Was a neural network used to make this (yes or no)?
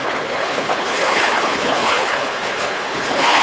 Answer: yes